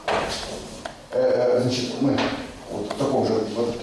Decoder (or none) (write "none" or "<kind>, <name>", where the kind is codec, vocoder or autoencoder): none